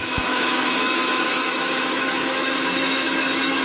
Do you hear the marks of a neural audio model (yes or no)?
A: yes